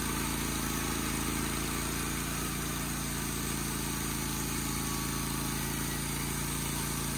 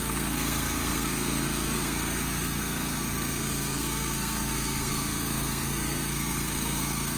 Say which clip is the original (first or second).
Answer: first